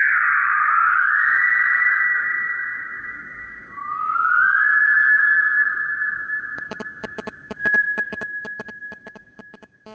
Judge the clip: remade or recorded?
remade